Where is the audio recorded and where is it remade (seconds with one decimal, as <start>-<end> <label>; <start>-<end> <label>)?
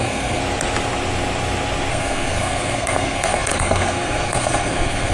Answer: 0.0-0.4 remade; 0.4-1.9 recorded; 1.9-5.1 remade